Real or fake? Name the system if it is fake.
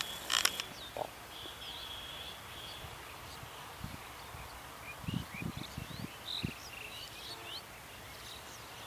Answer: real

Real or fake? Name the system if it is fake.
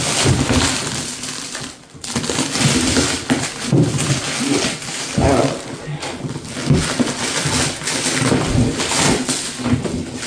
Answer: real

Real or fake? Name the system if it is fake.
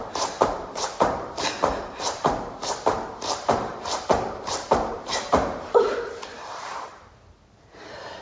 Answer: fake, vocoder, BigVGAN v2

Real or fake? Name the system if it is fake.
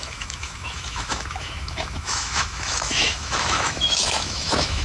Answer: fake, autoencoder, DAC-VAE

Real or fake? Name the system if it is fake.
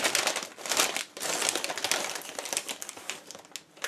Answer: real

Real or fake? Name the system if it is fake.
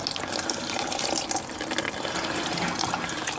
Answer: real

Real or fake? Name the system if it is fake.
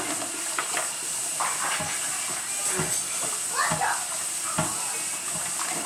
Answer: real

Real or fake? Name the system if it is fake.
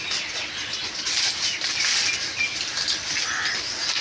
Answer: real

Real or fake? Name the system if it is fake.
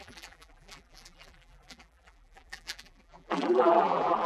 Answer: fake, vocoder, BigVGAN v2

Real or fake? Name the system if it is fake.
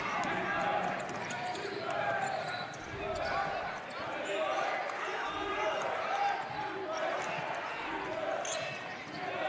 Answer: real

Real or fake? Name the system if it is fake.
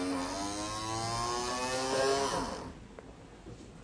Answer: real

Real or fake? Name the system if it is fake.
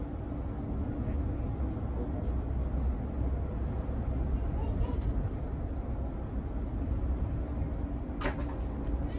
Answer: real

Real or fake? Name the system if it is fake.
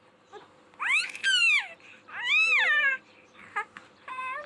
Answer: real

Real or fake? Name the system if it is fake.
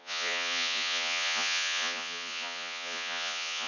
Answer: fake, vocoder, Vocos